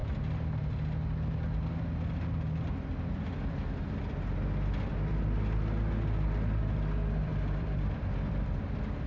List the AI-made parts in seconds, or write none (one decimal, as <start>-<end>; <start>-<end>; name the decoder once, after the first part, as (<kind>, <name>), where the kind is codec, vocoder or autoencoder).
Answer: 3.1-9.1 (vocoder, BigVGAN v2)